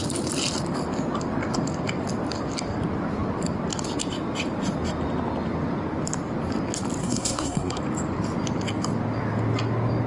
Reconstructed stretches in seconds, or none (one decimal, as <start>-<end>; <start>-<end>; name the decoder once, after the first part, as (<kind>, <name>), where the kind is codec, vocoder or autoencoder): 7.0-7.8 (codec, SNAC)